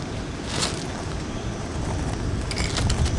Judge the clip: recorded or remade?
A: recorded